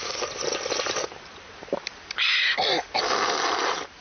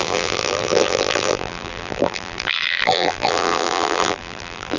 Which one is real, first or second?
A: first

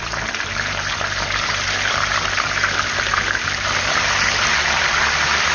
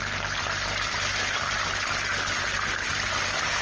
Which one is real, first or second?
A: second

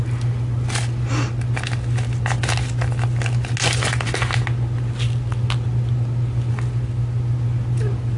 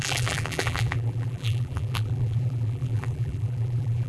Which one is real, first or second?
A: first